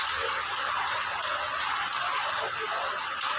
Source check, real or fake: real